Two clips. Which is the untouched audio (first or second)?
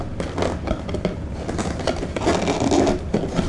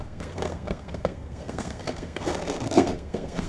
first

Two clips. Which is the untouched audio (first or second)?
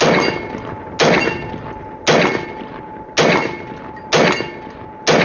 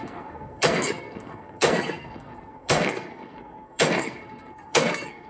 first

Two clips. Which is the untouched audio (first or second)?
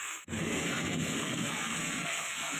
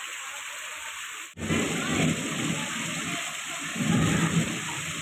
second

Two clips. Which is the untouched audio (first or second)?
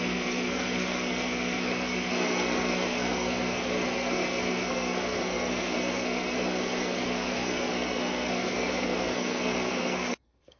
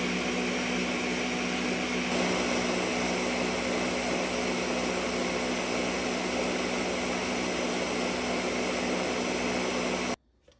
second